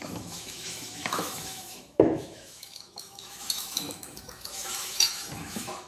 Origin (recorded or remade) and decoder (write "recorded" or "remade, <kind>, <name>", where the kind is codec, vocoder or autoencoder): remade, autoencoder, DAC-VAE